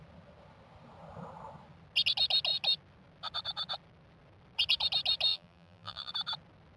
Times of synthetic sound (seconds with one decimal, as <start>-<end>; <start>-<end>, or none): 5.3-6.1